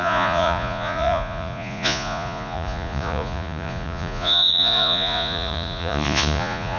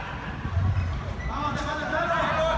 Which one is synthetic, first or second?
first